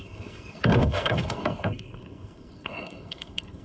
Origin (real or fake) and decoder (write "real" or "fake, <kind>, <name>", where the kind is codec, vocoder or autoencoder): fake, codec, SNAC